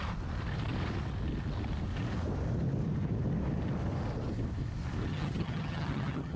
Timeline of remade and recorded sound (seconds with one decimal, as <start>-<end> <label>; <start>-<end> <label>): 0.0-5.1 recorded; 5.1-6.4 remade